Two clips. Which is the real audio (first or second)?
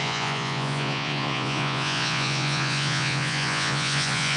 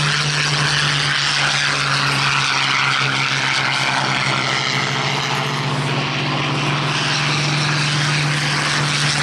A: second